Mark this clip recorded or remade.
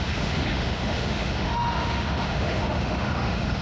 remade